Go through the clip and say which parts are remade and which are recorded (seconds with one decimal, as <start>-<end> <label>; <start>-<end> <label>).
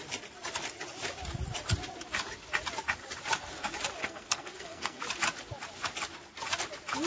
0.0-4.0 recorded; 4.0-5.0 remade; 5.0-7.1 recorded